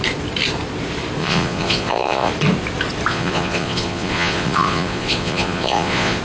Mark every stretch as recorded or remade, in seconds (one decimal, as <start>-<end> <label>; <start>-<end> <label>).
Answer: 0.0-1.2 recorded; 1.2-2.3 remade; 2.3-3.1 recorded; 3.1-6.2 remade